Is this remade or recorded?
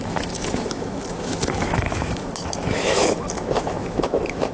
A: remade